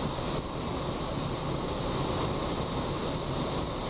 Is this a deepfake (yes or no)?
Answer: no